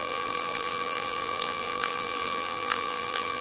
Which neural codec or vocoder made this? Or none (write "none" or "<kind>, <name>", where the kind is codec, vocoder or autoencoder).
vocoder, BigVGAN v2